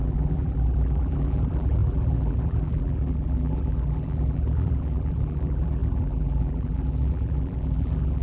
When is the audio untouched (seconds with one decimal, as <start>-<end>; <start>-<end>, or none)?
none